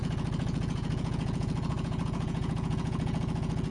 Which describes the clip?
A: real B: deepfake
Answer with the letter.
B